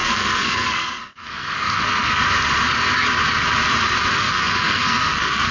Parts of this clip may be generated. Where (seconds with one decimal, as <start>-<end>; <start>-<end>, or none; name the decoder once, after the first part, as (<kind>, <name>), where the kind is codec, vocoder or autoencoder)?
0.0-2.2 (codec, SNAC); 4.1-5.5